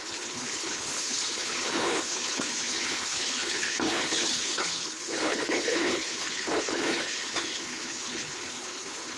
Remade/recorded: remade